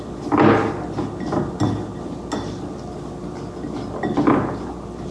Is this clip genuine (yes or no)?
yes